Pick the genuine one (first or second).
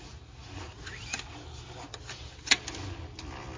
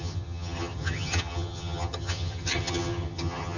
first